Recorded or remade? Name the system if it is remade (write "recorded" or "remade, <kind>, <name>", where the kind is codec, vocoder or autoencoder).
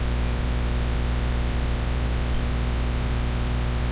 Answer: recorded